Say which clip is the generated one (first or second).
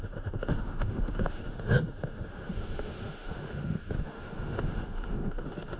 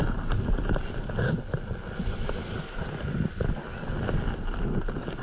first